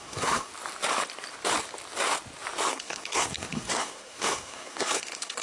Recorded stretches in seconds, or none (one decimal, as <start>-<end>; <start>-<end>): 0.5-2.7